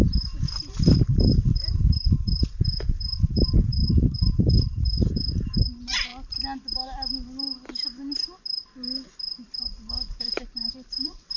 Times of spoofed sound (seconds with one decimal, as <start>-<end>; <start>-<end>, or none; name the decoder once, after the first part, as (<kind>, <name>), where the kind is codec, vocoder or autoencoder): 0.0-6.1 (vocoder, BigVGAN v2); 10.2-11.4